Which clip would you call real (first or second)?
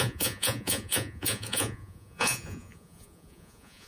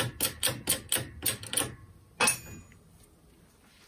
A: second